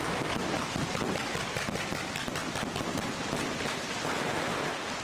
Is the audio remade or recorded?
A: recorded